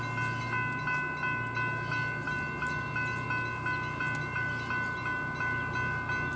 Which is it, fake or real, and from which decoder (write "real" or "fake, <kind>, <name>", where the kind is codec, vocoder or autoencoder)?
real